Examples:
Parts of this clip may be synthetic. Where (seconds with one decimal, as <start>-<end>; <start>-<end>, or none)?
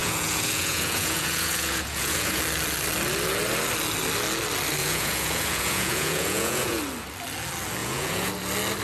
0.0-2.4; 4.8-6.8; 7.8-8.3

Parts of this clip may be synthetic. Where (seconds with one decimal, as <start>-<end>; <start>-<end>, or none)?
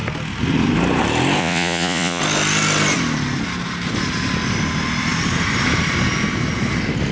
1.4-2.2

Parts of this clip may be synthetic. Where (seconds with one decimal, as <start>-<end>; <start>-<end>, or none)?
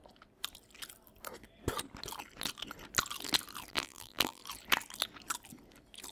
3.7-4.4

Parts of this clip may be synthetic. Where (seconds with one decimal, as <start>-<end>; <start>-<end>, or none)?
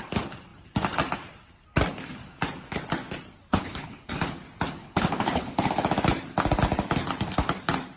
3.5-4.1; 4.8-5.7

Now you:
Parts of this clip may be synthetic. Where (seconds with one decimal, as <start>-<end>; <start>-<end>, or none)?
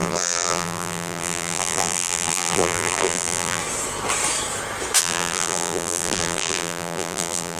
0.0-3.6; 5.0-7.6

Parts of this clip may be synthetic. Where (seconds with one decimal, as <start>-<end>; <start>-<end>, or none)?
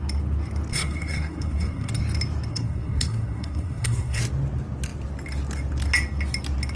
0.7-1.9; 2.5-4.2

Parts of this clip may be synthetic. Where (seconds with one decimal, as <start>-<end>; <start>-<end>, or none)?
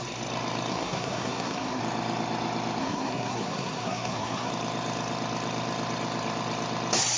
0.7-1.8; 2.8-4.5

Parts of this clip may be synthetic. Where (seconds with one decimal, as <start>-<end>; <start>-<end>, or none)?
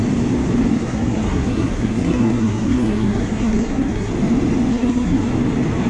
0.7-4.1; 4.7-5.3